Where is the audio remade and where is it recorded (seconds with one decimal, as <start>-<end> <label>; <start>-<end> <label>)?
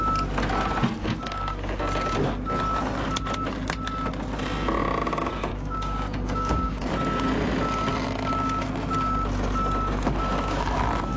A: 0.0-1.0 recorded; 1.0-1.8 remade; 1.8-5.5 recorded; 5.5-6.9 remade; 6.9-11.2 recorded